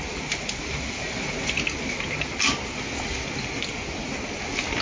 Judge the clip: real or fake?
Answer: real